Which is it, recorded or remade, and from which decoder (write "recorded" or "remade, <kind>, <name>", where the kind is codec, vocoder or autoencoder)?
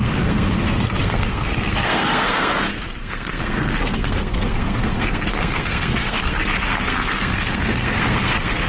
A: remade, codec, SNAC